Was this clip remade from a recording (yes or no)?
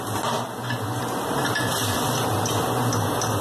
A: no